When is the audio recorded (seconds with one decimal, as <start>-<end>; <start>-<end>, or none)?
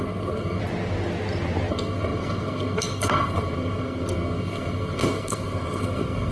0.6-1.7